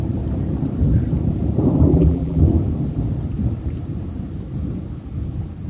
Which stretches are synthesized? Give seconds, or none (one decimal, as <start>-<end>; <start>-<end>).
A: 1.9-2.4

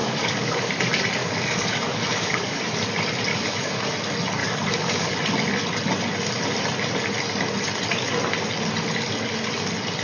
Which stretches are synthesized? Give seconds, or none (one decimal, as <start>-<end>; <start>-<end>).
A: 0.0-0.7; 1.2-2.6; 3.3-3.9; 4.4-5.2

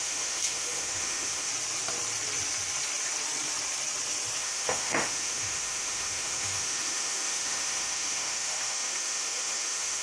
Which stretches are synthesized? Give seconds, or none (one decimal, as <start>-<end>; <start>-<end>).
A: 0.0-1.5; 4.4-10.0

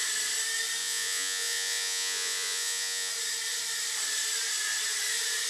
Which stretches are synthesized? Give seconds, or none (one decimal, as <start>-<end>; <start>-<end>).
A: 0.8-3.1

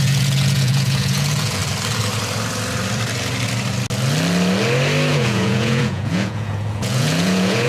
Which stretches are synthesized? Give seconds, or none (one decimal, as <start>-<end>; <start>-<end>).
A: 0.0-1.6; 5.1-7.7

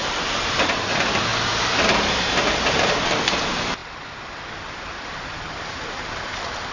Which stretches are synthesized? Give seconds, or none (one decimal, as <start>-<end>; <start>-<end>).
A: 0.0-3.8; 4.7-6.7

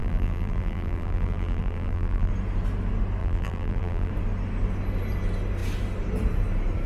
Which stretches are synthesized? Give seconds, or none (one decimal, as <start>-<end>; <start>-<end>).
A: 0.0-2.3; 3.2-4.1